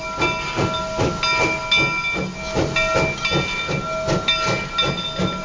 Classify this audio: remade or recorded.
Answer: recorded